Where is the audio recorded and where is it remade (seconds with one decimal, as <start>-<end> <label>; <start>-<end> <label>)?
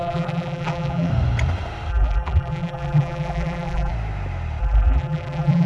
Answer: 0.0-1.1 remade; 1.1-1.9 recorded; 1.9-3.9 remade; 3.9-4.6 recorded; 4.6-5.7 remade